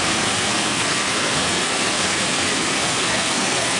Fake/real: fake